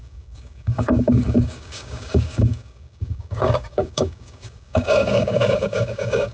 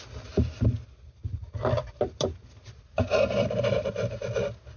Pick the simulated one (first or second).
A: first